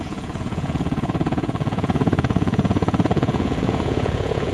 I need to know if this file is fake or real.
fake